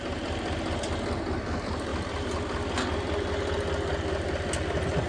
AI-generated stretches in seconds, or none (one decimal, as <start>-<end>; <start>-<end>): 1.9-2.8